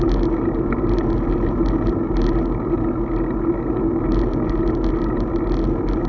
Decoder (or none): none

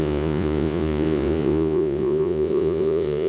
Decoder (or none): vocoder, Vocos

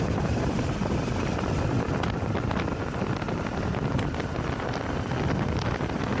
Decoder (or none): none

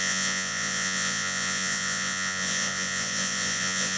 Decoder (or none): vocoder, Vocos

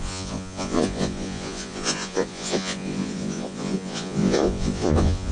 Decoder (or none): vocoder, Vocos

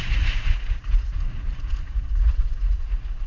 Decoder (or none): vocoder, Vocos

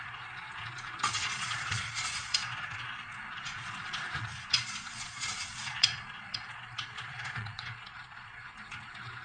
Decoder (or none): vocoder, Vocos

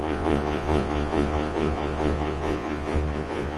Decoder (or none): vocoder, Vocos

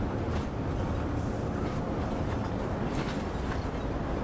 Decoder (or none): none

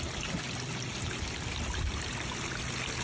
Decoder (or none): none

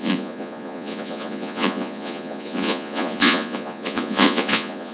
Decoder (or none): vocoder, Vocos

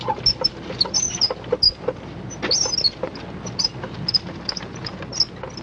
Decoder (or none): none